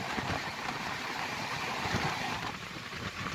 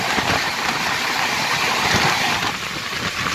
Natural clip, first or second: second